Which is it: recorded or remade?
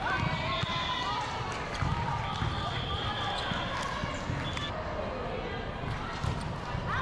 recorded